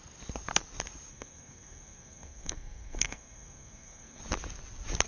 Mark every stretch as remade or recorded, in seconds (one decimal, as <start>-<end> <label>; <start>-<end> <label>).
0.0-1.1 recorded; 1.1-4.2 remade; 4.2-5.1 recorded